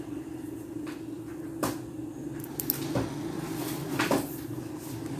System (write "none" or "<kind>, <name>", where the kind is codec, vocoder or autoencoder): vocoder, BigVGAN v2